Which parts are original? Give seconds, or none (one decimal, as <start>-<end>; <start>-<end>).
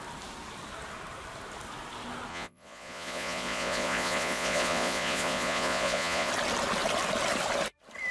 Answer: 0.0-2.3; 6.3-8.1